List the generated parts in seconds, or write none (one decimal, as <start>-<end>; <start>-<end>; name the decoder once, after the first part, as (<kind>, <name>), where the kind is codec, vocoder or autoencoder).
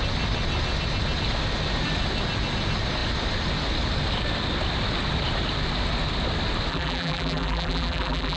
6.7-8.4 (vocoder, BigVGAN v2)